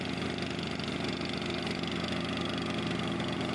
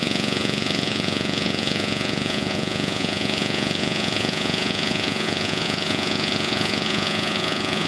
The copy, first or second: second